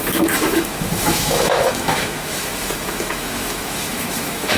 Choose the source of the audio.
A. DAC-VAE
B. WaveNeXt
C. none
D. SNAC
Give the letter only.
A